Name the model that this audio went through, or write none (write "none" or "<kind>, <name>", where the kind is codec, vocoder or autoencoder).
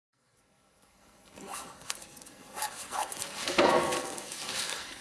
codec, SNAC